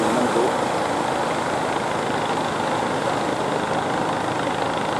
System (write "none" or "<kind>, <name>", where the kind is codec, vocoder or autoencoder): none